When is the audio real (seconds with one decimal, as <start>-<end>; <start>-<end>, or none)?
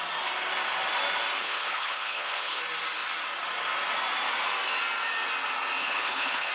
0.0-1.4; 2.6-5.8